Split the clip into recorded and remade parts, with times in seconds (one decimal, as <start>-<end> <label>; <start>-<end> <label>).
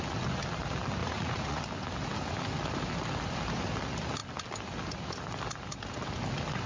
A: 0.0-1.0 recorded; 1.0-1.6 remade; 1.6-6.7 recorded